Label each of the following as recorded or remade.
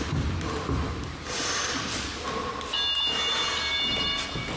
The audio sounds recorded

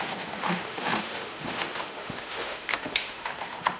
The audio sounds remade